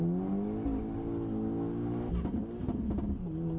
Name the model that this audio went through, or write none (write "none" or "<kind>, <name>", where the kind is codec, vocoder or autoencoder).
none